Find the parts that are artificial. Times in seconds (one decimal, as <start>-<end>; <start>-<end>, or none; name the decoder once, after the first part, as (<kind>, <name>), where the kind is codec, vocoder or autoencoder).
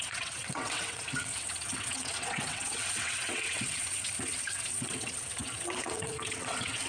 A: 0.0-6.9 (vocoder, WaveNeXt)